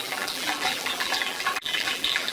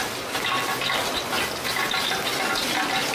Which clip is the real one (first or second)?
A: second